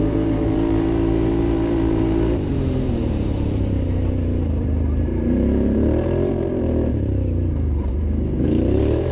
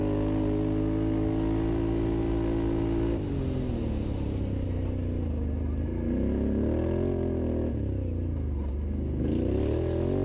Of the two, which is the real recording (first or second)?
second